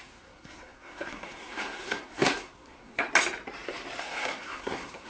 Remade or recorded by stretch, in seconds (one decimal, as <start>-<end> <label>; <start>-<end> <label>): 0.0-3.1 remade; 3.1-4.0 recorded; 4.0-5.1 remade

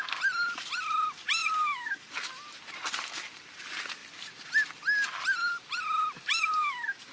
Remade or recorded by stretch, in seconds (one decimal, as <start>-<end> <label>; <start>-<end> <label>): 0.0-7.1 remade

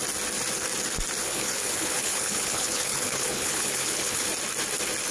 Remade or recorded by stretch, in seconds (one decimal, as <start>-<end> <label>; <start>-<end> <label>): 0.0-1.2 recorded; 1.2-4.3 remade; 4.3-5.1 recorded

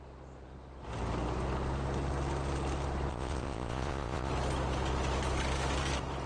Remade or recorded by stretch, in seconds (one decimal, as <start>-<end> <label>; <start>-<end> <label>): 0.0-3.1 recorded; 3.1-4.3 remade; 4.3-6.3 recorded

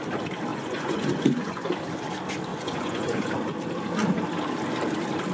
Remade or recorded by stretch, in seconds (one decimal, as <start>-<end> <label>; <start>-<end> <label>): 0.0-0.5 recorded; 0.5-1.7 remade; 1.7-2.5 recorded; 2.5-3.3 remade; 3.3-5.3 recorded

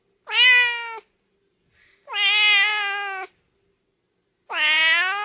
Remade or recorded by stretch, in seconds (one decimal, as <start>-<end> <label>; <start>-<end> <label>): 0.0-5.2 recorded

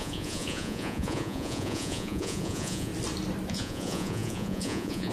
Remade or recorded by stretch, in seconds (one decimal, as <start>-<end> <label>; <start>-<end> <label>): 0.0-2.9 remade; 2.9-3.5 recorded; 3.5-5.1 remade